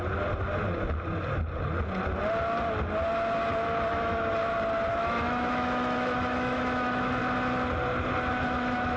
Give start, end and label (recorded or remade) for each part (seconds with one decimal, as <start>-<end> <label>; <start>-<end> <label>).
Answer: 0.0-3.9 recorded; 3.9-4.4 remade; 4.4-4.9 recorded; 4.9-7.2 remade; 7.2-8.3 recorded; 8.3-9.0 remade